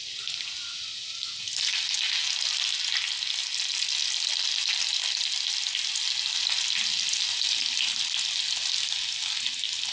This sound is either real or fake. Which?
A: real